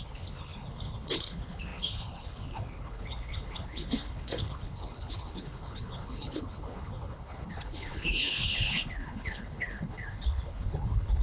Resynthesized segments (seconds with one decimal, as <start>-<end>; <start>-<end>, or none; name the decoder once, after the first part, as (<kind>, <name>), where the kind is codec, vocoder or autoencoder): 0.0-11.2 (codec, HILCodec)